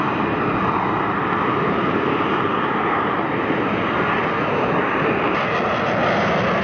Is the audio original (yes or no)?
yes